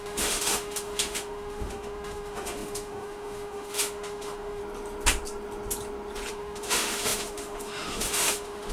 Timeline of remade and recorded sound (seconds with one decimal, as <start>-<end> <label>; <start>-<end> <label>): 0.0-4.6 remade; 4.6-6.3 recorded; 6.3-8.7 remade